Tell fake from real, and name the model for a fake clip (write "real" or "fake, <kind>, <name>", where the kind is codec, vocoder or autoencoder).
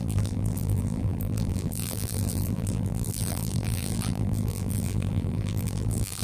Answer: fake, vocoder, BigVGAN v2